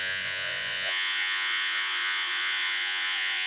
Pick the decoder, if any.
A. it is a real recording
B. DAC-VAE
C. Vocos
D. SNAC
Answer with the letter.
C